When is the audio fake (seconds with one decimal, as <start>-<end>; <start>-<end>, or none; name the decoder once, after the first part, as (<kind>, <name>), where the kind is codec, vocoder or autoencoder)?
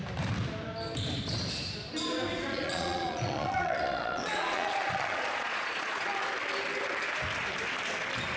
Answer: 2.5-6.1 (vocoder, Vocos)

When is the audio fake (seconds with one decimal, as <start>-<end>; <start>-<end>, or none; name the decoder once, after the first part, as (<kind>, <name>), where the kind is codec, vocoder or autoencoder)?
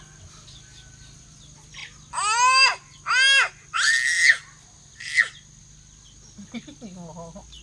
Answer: none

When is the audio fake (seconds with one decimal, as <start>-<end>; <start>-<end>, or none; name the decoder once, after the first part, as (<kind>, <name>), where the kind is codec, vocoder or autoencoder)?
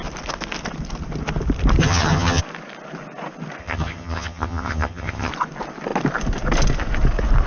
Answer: 1.8-2.4 (vocoder, HiFi-GAN); 3.6-5.3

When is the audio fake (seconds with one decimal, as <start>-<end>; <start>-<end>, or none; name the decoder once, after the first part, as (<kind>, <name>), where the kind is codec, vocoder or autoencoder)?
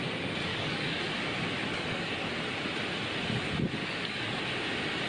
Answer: 0.5-1.0 (codec, DAC); 1.7-2.3; 3.8-4.4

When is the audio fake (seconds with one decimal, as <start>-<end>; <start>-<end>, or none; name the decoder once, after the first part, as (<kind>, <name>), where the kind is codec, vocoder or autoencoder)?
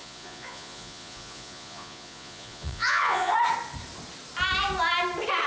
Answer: 0.0-3.3 (vocoder, Vocos)